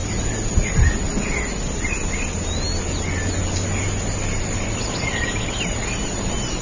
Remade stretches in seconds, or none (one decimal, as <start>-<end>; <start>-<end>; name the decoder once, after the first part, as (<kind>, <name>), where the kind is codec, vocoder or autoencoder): none